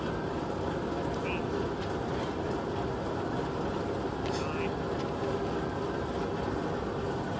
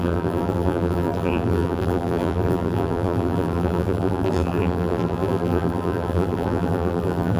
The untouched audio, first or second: first